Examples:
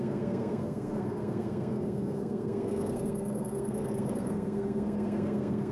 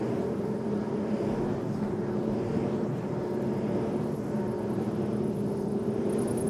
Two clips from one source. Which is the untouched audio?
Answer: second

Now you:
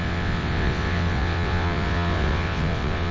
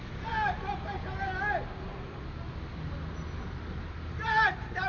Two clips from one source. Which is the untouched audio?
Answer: second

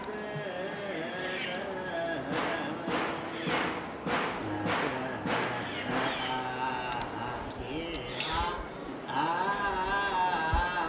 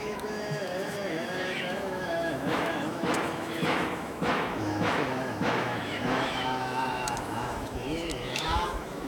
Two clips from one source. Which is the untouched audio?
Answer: first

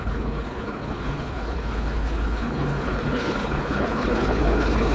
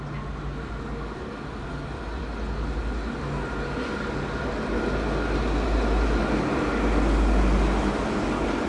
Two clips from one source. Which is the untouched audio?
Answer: second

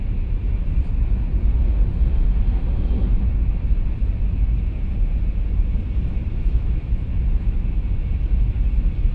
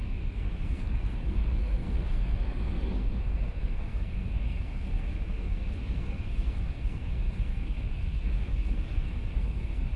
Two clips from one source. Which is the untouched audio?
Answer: first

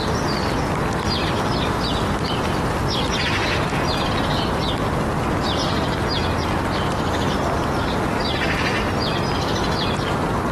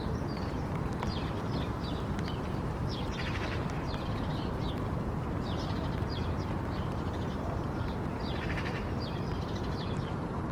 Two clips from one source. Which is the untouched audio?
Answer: first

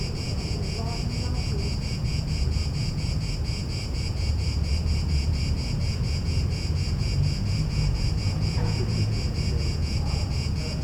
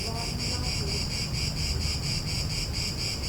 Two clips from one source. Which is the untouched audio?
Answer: second